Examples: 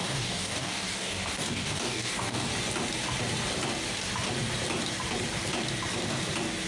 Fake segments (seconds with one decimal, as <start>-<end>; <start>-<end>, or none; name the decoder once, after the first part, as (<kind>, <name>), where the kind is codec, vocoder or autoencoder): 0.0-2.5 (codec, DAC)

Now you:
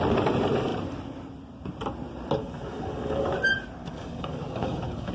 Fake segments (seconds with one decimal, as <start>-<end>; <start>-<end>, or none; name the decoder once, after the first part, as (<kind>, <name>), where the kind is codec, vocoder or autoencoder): 2.4-3.3 (codec, DAC); 3.8-5.1

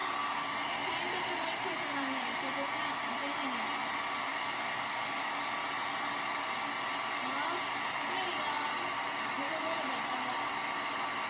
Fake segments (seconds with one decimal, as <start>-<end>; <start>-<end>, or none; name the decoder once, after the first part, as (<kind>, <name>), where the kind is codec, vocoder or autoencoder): 4.3-5.3 (codec, DAC)